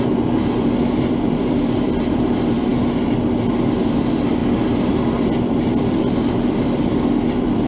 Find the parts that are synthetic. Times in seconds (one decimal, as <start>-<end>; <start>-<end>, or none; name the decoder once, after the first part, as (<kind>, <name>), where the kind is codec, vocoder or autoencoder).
0.0-2.7 (vocoder, BigVGAN v2); 3.5-4.4; 5.1-7.7

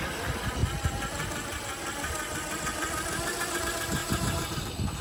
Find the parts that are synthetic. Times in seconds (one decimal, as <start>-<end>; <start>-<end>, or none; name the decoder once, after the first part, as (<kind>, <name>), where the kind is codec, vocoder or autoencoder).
4.0-4.6 (vocoder, BigVGAN v2)

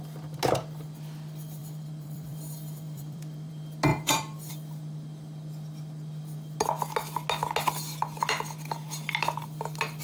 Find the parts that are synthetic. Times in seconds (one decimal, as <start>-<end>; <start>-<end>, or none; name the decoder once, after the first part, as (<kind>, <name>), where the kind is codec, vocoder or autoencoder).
1.6-3.5 (vocoder, BigVGAN v2); 3.9-4.5

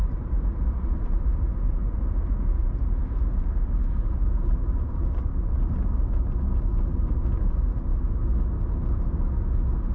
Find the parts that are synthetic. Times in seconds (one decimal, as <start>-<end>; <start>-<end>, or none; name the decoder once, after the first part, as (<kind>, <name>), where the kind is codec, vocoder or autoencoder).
0.0-1.4 (vocoder, BigVGAN v2); 1.8-5.3